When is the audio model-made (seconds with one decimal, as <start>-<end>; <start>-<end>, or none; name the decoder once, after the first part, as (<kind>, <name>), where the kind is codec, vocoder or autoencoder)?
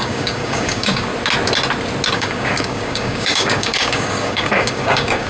0.0-1.1 (codec, DAC); 2.1-5.3